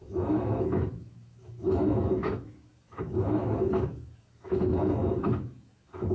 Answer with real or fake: fake